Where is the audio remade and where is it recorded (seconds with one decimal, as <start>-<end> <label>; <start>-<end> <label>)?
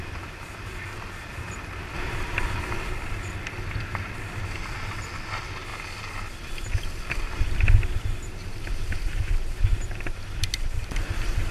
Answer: 0.0-5.7 remade; 5.7-7.0 recorded; 7.0-11.5 remade